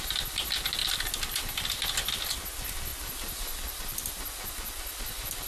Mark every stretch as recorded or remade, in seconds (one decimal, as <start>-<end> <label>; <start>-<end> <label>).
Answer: 0.0-2.9 recorded; 2.9-4.1 remade; 4.1-5.5 recorded